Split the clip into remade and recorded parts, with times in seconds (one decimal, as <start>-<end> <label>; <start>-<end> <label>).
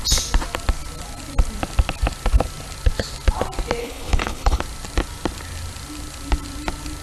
0.0-3.8 recorded; 3.8-4.6 remade; 4.6-7.0 recorded